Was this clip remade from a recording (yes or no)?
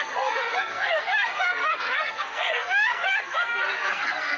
yes